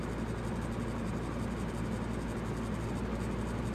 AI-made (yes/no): no